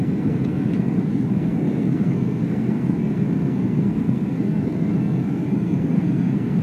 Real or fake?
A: fake